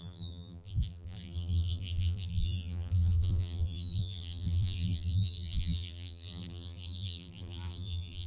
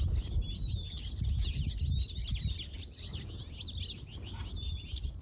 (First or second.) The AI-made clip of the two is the first